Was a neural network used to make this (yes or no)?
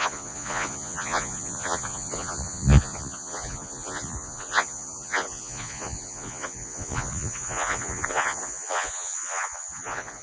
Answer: yes